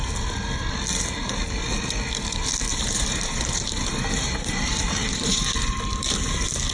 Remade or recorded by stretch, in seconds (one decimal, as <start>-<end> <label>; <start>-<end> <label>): 0.0-2.7 recorded; 2.7-5.7 remade; 5.7-6.7 recorded